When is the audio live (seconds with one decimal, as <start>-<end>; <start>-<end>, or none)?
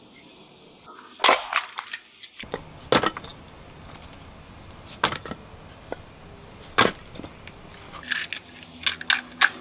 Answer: 0.0-9.6